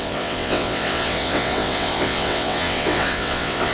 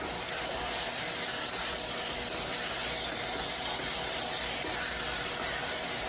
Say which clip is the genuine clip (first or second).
second